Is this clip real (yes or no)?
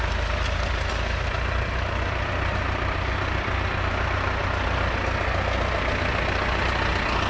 yes